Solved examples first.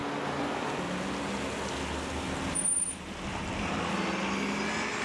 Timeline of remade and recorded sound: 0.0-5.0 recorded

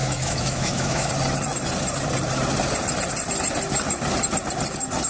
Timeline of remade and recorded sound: 0.0-1.1 remade; 1.1-5.1 recorded

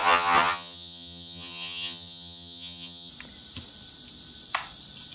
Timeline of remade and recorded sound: 0.0-3.1 remade; 3.1-5.1 recorded

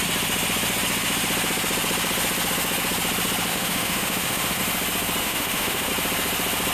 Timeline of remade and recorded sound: 0.0-3.5 recorded; 3.5-4.6 remade; 4.6-5.2 recorded; 5.2-5.9 remade; 5.9-6.7 recorded

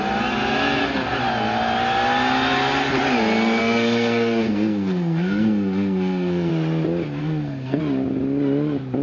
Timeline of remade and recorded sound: 0.0-3.6 recorded; 3.6-6.5 remade; 6.5-7.2 recorded; 7.2-7.8 remade; 7.8-9.0 recorded